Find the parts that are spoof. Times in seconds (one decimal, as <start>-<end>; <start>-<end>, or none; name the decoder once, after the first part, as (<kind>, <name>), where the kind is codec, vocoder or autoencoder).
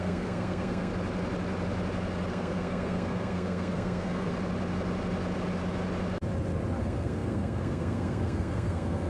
0.0-0.9 (codec, SNAC); 2.3-4.3; 6.8-9.1